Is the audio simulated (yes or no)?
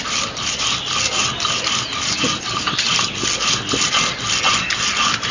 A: no